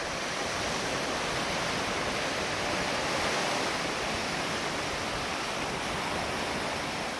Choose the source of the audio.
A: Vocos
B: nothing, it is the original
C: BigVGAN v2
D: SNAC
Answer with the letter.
B